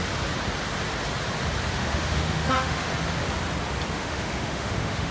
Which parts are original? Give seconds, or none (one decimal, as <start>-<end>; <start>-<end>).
0.0-1.7; 2.9-3.9